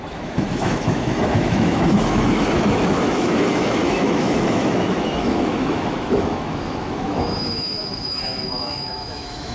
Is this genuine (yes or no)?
no